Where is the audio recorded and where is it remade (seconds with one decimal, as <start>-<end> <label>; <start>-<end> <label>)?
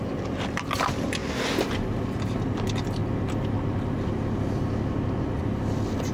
0.0-1.2 remade; 1.2-2.0 recorded; 2.0-3.0 remade; 3.0-5.4 recorded; 5.4-6.1 remade